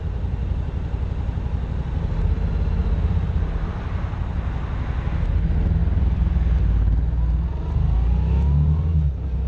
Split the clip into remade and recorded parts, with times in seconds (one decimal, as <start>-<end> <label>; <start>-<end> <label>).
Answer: 0.0-2.8 recorded; 2.8-4.2 remade; 4.2-5.8 recorded; 5.8-6.6 remade; 6.6-9.5 recorded